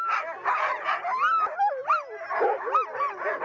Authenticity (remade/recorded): recorded